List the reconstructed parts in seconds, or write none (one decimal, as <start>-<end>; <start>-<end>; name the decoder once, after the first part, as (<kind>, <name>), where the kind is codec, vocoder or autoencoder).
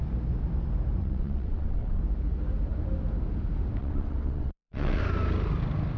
1.0-2.0 (vocoder, WaveNeXt); 3.8-5.0